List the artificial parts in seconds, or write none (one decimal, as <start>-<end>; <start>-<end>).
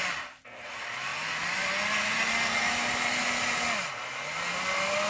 none